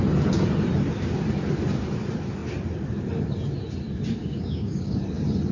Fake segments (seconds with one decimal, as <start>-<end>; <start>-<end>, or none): 4.2-5.0